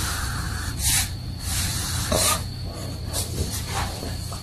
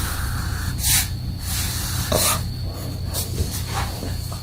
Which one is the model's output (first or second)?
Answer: first